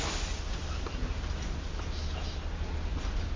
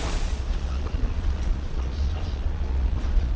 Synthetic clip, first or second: second